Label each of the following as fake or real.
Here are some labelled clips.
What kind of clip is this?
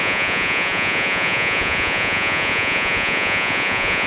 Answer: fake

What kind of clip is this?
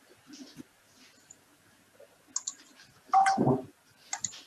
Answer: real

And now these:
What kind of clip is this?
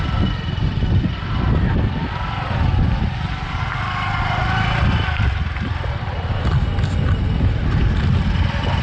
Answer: real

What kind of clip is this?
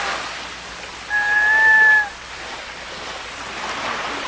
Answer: real